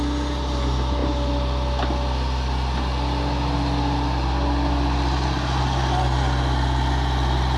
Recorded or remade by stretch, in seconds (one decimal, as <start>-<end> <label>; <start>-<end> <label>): 0.0-7.6 recorded